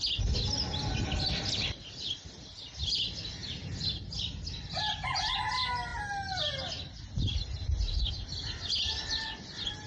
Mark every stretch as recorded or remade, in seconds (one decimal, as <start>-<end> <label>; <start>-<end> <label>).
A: 0.0-9.9 recorded